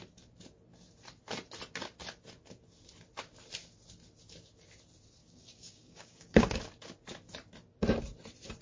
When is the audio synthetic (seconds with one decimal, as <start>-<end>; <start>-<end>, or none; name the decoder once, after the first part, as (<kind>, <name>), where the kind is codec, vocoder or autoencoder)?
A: 5.2-6.6 (codec, DAC)